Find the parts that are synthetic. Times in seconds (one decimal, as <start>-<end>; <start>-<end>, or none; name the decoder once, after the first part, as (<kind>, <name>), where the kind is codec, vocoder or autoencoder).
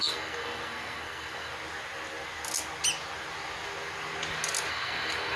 0.0-1.5 (codec, SNAC); 4.7-5.4